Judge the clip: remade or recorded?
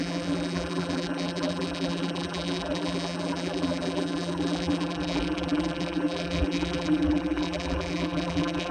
remade